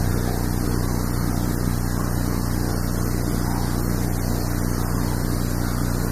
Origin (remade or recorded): recorded